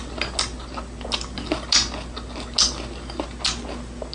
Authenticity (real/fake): real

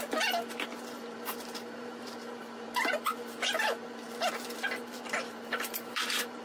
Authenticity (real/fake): fake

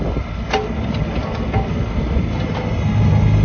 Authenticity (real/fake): real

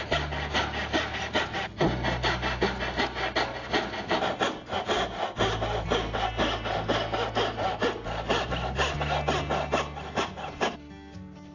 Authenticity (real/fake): real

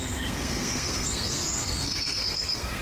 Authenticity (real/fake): fake